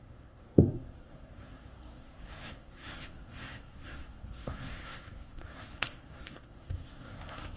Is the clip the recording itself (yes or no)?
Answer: no